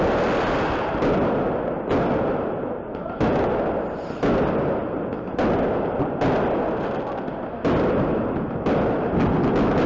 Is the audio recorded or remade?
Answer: recorded